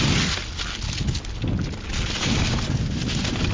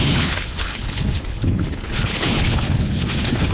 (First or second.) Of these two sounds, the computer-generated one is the second